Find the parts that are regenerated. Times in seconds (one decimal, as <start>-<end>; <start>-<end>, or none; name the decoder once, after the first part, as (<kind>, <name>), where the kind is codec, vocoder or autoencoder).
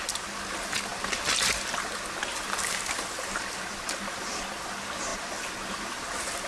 none